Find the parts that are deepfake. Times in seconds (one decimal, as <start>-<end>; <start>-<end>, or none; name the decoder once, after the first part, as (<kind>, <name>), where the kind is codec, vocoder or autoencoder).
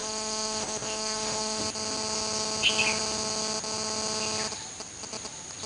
0.0-1.6 (autoencoder, DAC-VAE)